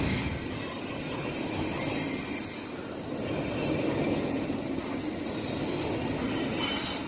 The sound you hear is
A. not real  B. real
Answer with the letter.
B